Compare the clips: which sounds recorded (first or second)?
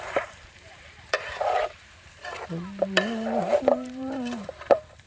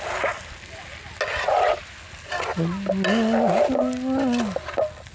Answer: second